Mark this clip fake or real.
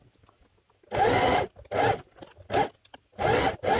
real